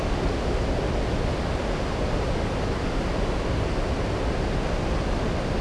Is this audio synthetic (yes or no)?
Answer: no